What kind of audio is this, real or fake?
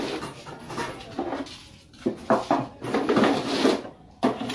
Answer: real